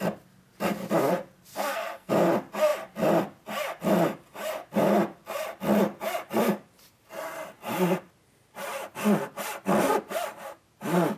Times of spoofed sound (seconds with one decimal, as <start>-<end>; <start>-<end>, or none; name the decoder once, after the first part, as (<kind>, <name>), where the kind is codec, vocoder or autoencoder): 1.5-2.1 (codec, SNAC)